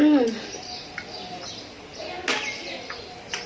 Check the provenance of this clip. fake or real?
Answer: real